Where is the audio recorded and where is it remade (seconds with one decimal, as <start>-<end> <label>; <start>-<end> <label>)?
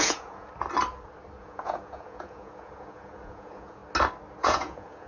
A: 0.0-0.5 remade; 0.5-1.4 recorded; 1.4-3.8 remade; 3.8-4.4 recorded; 4.4-5.1 remade